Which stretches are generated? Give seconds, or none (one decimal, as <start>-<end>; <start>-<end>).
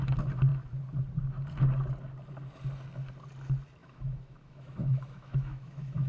3.8-6.1